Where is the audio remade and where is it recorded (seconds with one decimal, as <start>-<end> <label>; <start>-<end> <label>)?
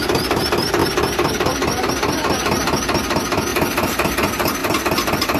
0.0-0.8 recorded; 0.8-1.9 remade; 1.9-3.5 recorded; 3.5-4.1 remade; 4.1-4.6 recorded; 4.6-5.4 remade